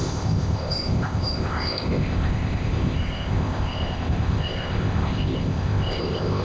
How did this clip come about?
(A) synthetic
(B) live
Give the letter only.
A